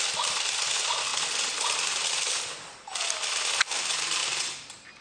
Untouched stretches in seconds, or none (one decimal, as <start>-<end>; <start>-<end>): 0.0-5.0